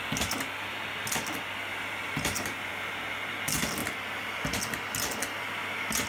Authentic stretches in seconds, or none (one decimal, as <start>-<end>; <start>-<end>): 0.0-1.7; 2.7-6.1